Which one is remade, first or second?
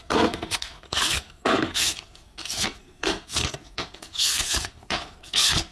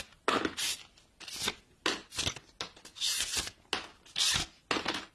first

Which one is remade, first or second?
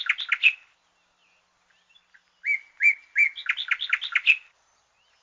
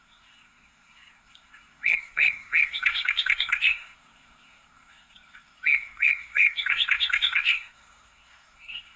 second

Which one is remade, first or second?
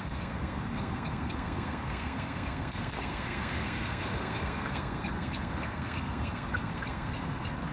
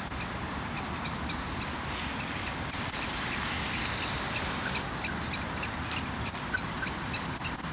first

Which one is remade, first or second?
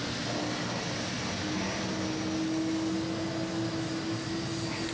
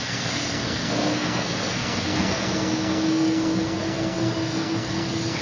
second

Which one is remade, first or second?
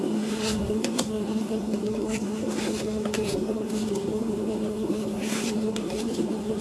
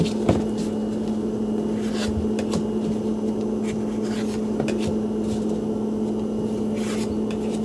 first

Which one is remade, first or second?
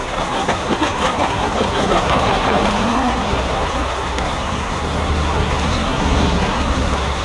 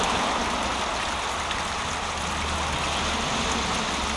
first